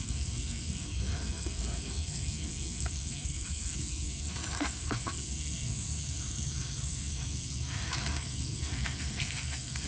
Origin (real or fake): fake